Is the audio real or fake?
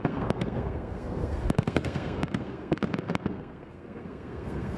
fake